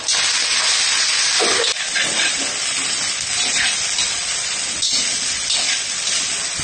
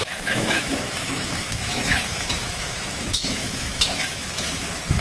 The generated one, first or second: second